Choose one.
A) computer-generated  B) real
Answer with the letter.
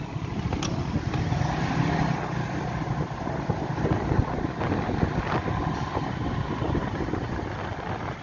B